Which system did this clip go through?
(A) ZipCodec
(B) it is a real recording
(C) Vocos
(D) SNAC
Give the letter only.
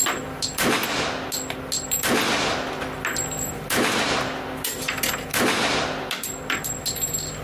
B